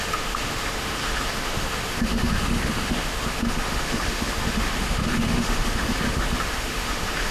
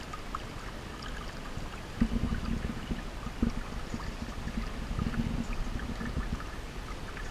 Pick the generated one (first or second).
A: first